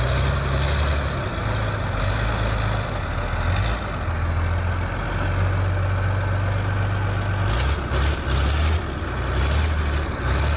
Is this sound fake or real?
real